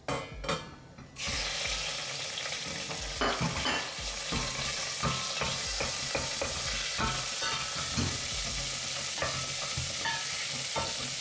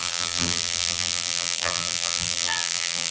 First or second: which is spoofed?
second